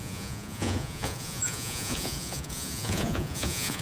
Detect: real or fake fake